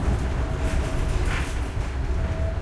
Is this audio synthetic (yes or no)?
no